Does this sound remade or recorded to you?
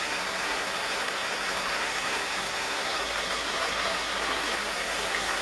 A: remade